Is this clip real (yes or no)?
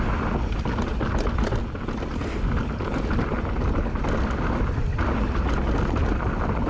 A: yes